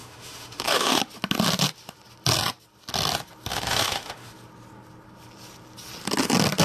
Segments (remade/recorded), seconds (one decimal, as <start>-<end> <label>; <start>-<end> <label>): 0.0-1.0 remade; 1.0-3.5 recorded; 3.5-4.3 remade; 4.3-6.6 recorded